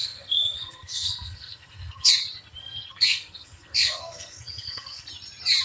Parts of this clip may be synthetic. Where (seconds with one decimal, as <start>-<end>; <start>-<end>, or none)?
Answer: 0.0-2.1; 2.6-5.1